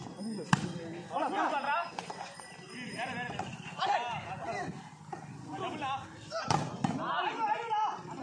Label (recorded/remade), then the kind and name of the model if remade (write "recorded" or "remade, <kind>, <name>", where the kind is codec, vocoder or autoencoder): recorded